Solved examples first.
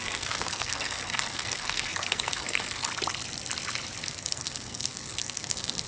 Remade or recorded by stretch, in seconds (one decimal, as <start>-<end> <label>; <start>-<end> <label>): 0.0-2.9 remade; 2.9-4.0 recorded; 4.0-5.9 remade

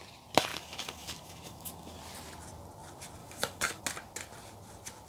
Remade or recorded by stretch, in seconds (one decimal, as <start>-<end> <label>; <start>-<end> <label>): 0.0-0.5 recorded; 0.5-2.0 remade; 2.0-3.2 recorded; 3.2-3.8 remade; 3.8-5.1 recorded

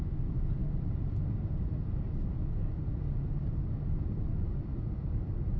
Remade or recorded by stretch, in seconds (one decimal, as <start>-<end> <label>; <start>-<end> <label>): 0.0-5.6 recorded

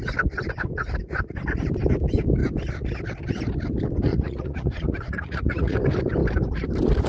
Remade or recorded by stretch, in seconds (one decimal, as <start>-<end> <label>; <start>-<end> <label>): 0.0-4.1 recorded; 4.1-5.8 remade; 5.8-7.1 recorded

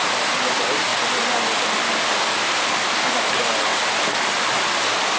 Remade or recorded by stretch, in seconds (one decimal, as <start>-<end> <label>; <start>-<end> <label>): 0.0-5.2 recorded